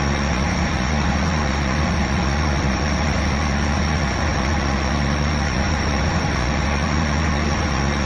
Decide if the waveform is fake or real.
fake